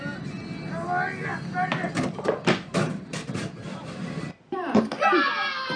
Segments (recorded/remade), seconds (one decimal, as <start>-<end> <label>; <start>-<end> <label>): 0.0-1.3 recorded; 1.3-4.8 remade; 4.8-5.8 recorded